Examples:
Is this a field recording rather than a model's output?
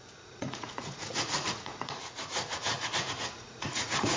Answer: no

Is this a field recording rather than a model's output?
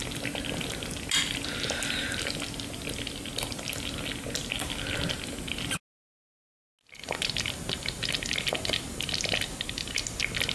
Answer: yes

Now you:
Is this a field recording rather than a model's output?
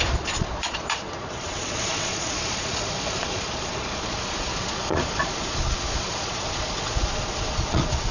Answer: no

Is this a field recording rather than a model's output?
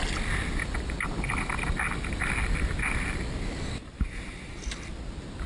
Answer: yes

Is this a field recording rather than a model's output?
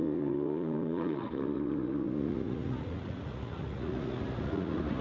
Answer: no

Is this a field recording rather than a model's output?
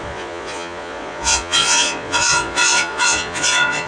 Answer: no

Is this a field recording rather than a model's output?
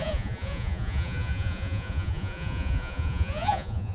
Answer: no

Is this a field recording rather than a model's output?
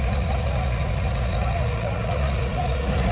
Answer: no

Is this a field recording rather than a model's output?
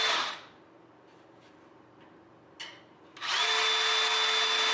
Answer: yes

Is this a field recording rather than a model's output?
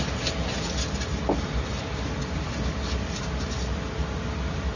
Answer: yes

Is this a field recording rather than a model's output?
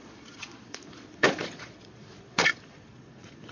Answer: no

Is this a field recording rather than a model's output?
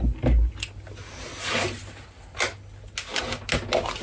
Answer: yes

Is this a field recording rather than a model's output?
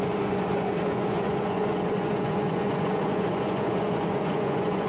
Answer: no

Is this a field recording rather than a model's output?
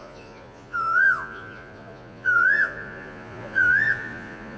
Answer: no